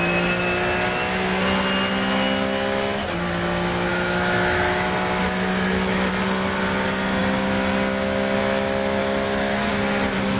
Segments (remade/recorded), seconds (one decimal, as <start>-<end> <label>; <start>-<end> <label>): 0.0-3.9 recorded; 3.9-6.1 remade; 6.1-9.0 recorded; 9.0-9.7 remade; 9.7-10.4 recorded